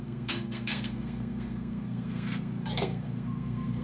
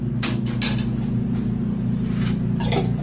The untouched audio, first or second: second